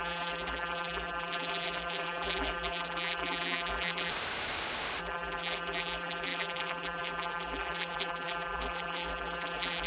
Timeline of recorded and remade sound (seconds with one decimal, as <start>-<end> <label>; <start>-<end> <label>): 0.0-4.1 remade; 4.1-5.0 recorded; 5.0-9.9 remade